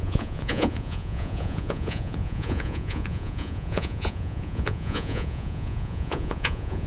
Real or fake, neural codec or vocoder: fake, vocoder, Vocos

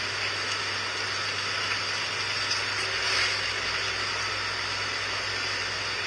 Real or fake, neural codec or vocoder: real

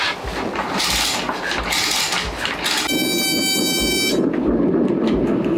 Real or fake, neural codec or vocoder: real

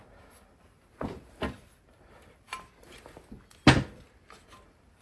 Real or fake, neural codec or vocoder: real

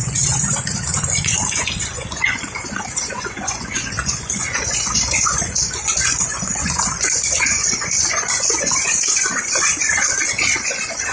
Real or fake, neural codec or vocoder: fake, vocoder, Vocos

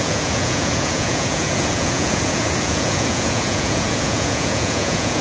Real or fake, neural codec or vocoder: fake, vocoder, Vocos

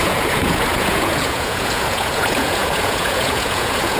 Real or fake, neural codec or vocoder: fake, vocoder, Vocos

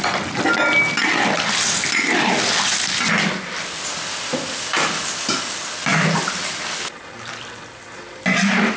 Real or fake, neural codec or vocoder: real